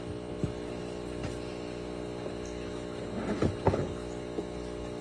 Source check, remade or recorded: recorded